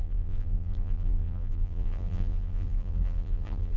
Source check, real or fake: fake